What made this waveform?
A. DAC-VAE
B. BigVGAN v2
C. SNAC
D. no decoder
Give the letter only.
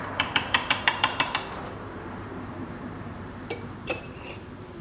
B